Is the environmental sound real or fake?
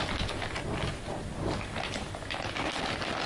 real